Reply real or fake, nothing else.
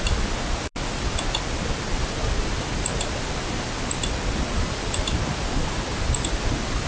real